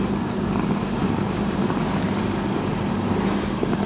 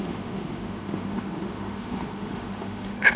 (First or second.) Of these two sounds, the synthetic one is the second